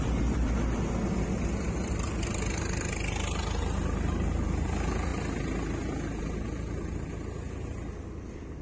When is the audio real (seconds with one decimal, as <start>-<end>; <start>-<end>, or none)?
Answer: 0.0-8.6